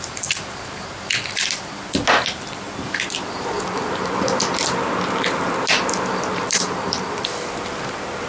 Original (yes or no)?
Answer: yes